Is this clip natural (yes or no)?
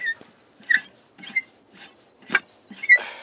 yes